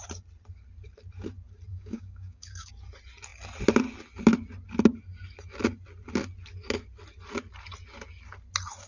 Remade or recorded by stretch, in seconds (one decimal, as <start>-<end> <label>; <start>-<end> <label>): 0.0-1.7 recorded; 1.7-2.7 remade; 2.7-8.9 recorded